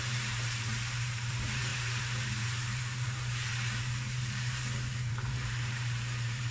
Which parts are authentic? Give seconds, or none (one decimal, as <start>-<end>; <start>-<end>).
none